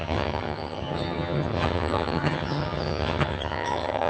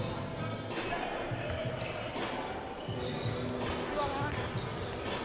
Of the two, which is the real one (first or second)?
second